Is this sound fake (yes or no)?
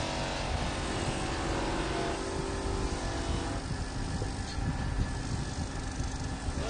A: no